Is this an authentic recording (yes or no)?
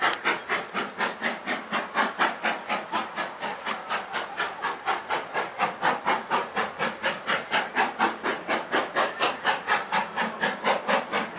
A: yes